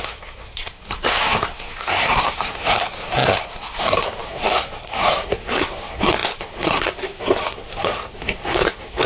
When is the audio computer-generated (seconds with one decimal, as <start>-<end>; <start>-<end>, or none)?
0.0-9.1